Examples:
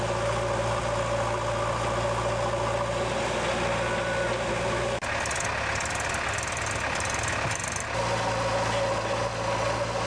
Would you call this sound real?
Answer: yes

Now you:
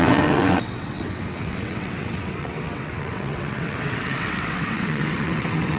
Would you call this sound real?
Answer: no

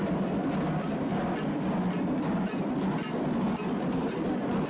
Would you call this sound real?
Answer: yes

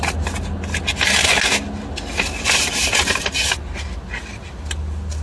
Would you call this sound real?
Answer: yes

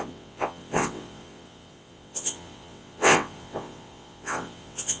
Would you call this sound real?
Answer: no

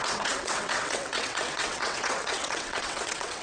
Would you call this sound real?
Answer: no